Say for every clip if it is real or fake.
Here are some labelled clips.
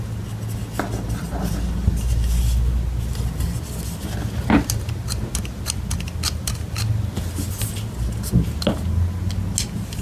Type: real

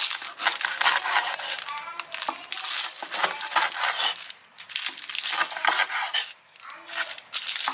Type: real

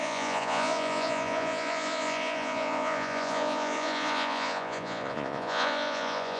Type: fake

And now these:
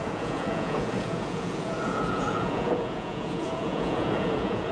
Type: fake